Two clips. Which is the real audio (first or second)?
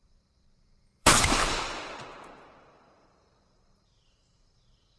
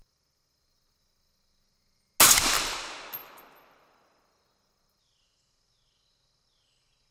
second